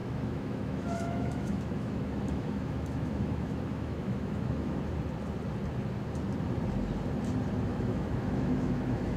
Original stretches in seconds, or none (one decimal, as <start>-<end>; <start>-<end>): 4.8-7.7